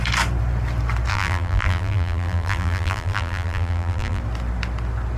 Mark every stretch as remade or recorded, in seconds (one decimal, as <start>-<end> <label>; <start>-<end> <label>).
0.0-1.1 recorded; 1.1-4.2 remade; 4.2-5.2 recorded